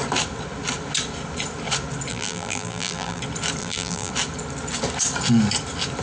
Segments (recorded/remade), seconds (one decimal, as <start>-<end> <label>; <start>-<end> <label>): 0.0-2.1 recorded; 2.1-3.2 remade; 3.2-3.6 recorded; 3.6-4.1 remade; 4.1-6.0 recorded